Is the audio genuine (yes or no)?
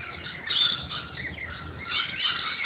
yes